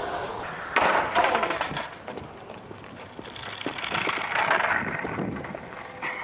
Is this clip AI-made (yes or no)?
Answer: no